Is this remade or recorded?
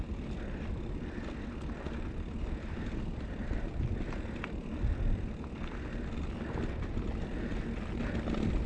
recorded